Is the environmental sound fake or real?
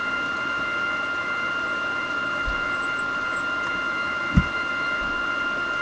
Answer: real